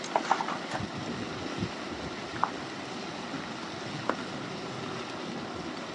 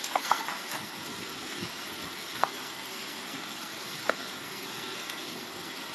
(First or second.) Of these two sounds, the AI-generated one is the second